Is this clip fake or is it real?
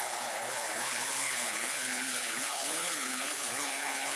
fake